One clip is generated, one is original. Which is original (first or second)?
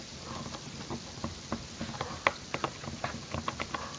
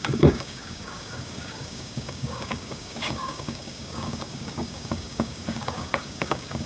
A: first